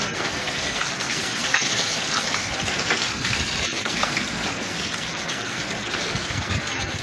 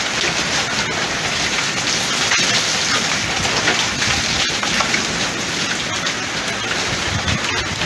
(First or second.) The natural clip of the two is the second